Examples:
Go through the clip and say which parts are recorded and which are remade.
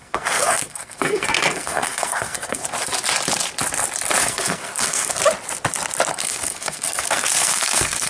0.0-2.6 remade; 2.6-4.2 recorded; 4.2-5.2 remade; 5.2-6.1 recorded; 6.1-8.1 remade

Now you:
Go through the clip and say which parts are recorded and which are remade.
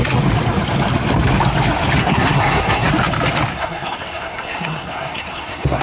0.0-2.0 recorded; 2.0-2.9 remade; 2.9-3.5 recorded; 3.5-5.8 remade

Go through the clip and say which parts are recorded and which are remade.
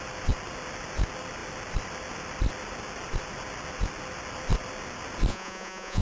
0.0-5.3 recorded; 5.3-6.0 remade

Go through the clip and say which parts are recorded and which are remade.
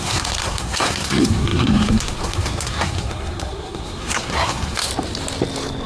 0.0-4.9 remade; 4.9-5.9 recorded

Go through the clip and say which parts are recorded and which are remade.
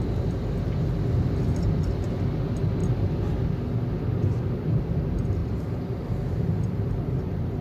0.0-5.4 recorded; 5.4-5.9 remade; 5.9-7.6 recorded